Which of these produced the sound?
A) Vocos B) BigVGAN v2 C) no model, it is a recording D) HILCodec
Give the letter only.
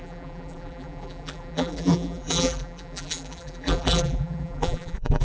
B